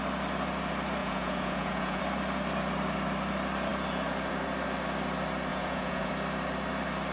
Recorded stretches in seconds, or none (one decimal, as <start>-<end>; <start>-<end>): 0.0-1.0; 2.0-5.5; 6.1-7.1